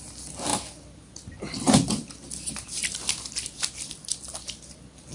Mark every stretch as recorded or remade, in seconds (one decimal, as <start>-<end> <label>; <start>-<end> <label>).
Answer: 0.0-5.1 recorded